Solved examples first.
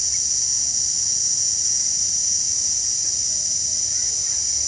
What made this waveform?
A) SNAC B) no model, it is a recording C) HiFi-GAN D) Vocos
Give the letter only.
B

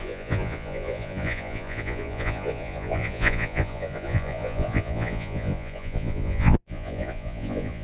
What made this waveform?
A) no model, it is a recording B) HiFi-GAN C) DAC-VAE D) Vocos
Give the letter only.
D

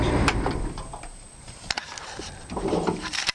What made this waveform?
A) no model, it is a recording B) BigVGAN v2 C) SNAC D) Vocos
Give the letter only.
B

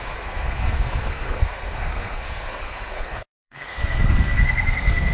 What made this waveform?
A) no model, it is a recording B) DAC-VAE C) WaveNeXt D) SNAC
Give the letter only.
D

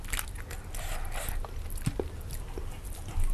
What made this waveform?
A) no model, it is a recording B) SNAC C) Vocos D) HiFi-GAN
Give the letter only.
A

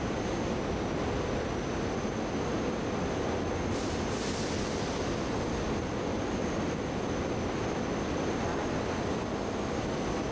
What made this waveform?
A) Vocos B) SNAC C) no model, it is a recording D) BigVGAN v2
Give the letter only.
C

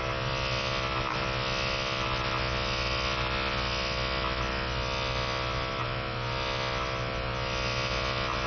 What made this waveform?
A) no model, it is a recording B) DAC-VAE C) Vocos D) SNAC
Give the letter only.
A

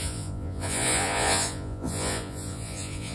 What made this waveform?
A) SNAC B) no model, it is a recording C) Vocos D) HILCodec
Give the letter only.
C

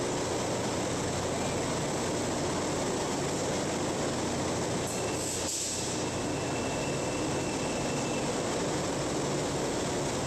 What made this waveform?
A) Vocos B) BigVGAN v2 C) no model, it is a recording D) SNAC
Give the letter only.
C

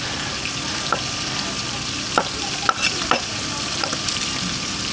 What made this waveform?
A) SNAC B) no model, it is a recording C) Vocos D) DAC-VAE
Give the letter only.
B